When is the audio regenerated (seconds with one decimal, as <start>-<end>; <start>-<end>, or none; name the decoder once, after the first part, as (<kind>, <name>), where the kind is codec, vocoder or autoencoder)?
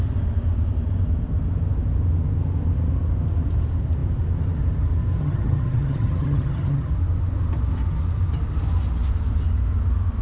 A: 5.2-6.9 (vocoder, HiFi-GAN)